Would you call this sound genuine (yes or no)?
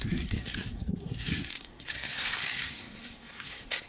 no